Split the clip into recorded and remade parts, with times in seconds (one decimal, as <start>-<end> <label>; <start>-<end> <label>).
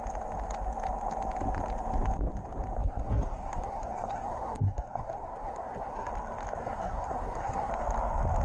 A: 0.0-2.8 recorded; 2.8-6.1 remade; 6.1-6.6 recorded; 6.6-7.7 remade; 7.7-8.4 recorded